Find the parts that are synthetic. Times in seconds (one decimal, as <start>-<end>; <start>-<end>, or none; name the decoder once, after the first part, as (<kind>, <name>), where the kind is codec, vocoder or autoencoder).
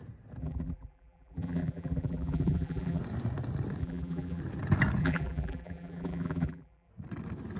0.4-3.0 (vocoder, BigVGAN v2); 3.8-4.4; 5.0-6.9